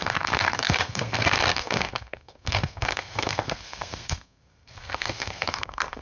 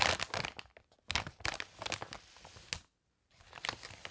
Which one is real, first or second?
second